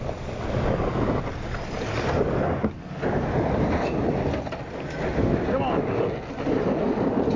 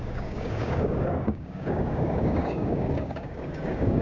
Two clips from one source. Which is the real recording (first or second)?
first